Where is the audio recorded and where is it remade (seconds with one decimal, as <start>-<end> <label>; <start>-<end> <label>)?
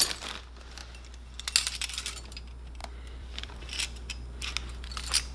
0.0-2.8 recorded; 2.8-3.6 remade; 3.6-5.3 recorded